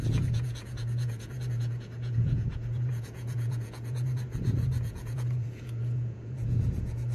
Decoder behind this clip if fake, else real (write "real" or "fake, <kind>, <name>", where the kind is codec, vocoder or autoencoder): fake, vocoder, Vocos